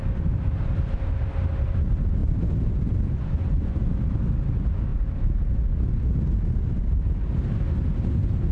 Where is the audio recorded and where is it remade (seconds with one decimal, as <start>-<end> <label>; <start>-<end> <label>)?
0.0-2.2 recorded; 2.2-3.2 remade; 3.2-4.9 recorded; 4.9-5.5 remade; 5.5-8.5 recorded